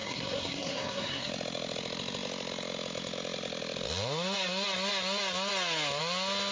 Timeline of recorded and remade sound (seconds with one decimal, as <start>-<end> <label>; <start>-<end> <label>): 0.0-1.3 remade; 1.3-6.5 recorded